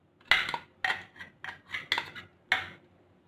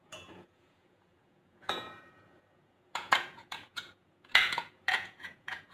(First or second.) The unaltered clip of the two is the first